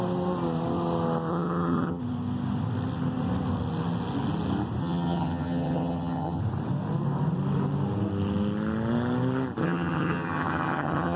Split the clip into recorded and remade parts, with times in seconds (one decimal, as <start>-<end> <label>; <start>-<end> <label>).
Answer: 0.0-1.3 recorded; 1.3-2.0 remade; 2.0-4.8 recorded; 4.8-6.4 remade; 6.4-9.6 recorded; 9.6-11.2 remade